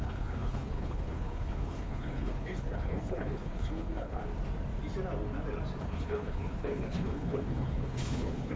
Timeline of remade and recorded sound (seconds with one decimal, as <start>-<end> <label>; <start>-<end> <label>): 0.0-4.2 remade; 4.2-5.8 recorded; 5.8-8.6 remade